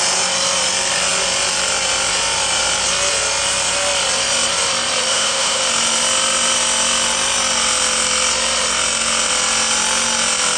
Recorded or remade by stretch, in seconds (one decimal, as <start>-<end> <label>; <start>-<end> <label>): 0.0-5.1 recorded; 5.1-5.6 remade; 5.6-10.6 recorded